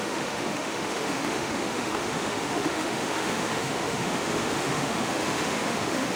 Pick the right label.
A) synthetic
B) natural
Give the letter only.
A